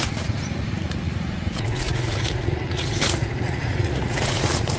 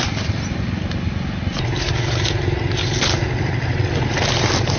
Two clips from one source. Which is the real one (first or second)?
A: second